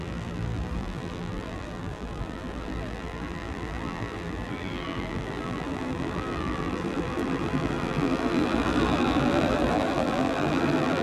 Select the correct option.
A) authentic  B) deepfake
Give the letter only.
B